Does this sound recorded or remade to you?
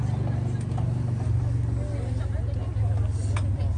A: recorded